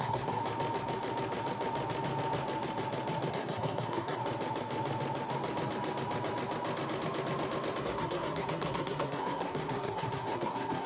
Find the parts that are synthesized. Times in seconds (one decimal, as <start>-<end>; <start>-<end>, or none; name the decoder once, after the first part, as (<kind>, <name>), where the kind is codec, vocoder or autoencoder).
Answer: 0.0-0.4 (codec, SNAC); 3.3-4.2; 7.8-10.9